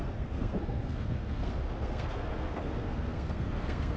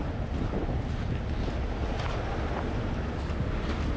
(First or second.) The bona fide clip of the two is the second